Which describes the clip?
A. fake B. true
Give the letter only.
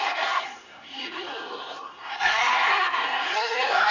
A